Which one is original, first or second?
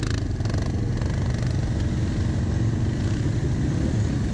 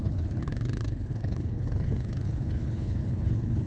first